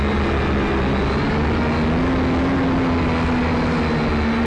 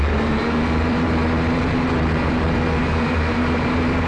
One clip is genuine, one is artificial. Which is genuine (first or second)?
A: first